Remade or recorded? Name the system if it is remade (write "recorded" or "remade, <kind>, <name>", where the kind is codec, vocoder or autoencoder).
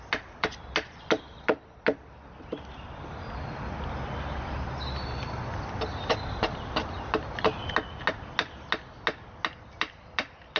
recorded